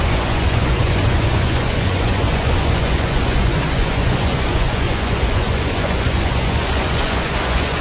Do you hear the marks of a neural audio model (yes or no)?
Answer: yes